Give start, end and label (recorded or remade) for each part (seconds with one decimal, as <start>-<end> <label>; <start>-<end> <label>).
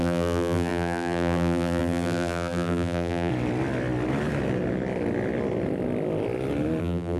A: 0.0-3.3 remade; 3.3-6.8 recorded; 6.8-7.2 remade